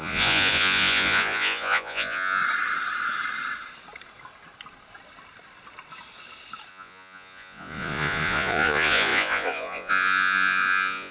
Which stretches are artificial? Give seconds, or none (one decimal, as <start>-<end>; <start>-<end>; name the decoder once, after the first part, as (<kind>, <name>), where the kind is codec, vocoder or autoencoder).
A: 0.0-2.4 (vocoder, Vocos); 6.7-11.1